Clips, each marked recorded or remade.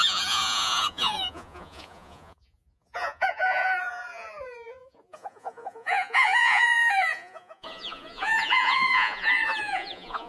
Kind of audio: remade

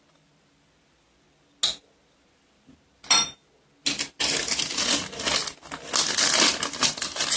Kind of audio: recorded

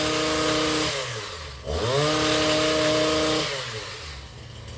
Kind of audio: recorded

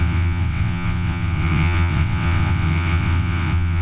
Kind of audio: remade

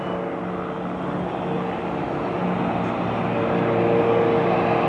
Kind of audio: recorded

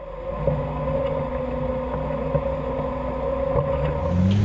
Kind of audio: recorded